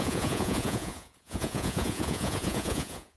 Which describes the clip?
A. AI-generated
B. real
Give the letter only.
A